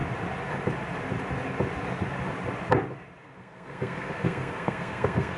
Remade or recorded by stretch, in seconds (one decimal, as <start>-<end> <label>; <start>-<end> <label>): 0.0-3.2 recorded; 3.2-5.4 remade